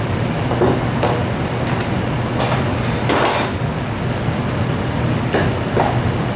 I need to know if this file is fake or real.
real